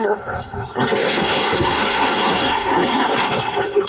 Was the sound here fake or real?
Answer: fake